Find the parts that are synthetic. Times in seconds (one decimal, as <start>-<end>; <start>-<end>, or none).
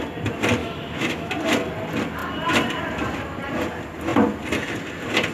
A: 0.6-1.3